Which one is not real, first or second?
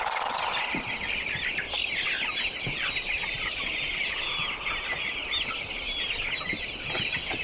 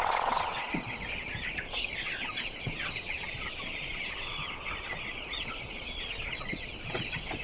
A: second